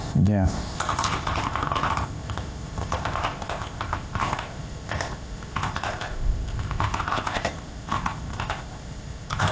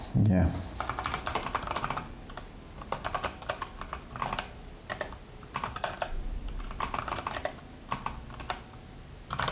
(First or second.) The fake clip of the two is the first